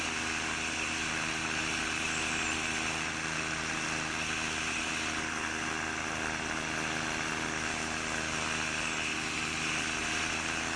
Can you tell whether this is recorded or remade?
recorded